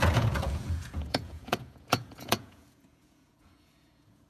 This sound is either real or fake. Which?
fake